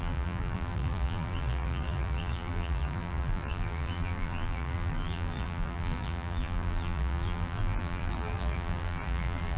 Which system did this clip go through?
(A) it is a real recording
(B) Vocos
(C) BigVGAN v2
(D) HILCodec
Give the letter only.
C